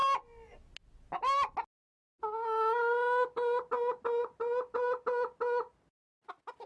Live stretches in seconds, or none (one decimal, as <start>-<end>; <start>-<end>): 0.0-6.7